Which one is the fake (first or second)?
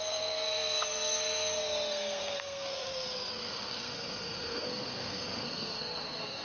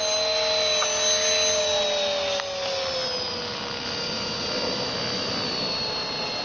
first